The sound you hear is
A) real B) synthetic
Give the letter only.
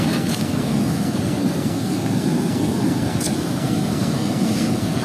B